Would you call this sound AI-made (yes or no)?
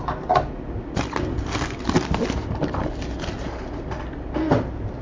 no